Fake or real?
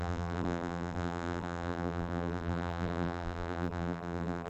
fake